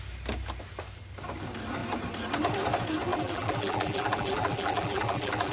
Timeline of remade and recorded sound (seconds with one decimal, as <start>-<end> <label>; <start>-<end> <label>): 0.0-3.1 recorded; 3.1-5.5 remade

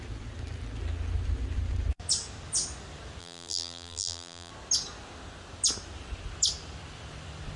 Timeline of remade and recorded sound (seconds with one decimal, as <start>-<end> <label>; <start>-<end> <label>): 0.0-3.2 recorded; 3.2-4.5 remade; 4.5-7.6 recorded

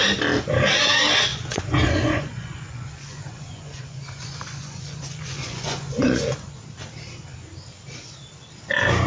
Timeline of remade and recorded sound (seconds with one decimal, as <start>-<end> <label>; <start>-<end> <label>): 0.0-1.3 recorded; 1.3-6.6 remade; 6.6-9.1 recorded

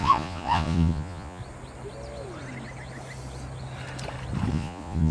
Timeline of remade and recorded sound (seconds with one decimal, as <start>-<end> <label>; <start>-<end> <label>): 0.0-1.4 remade; 1.4-4.5 recorded; 4.5-5.1 remade